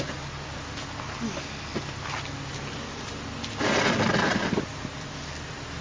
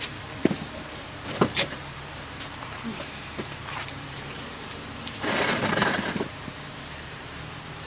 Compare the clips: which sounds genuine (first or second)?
first